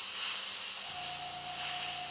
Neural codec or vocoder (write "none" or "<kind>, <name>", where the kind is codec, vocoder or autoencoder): none